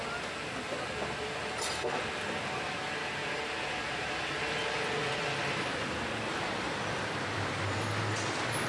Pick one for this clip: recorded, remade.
recorded